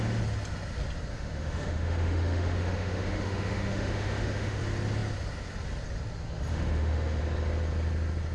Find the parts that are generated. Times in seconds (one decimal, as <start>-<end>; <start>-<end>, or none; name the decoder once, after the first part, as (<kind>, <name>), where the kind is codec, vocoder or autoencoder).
1.1-4.6 (autoencoder, DAC-VAE); 6.5-7.2